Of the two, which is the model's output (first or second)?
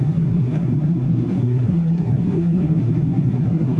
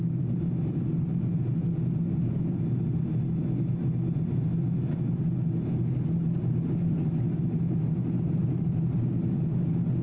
first